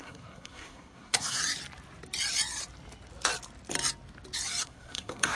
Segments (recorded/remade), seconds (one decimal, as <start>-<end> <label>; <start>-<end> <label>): 0.0-1.4 remade; 1.4-4.6 recorded; 4.6-5.4 remade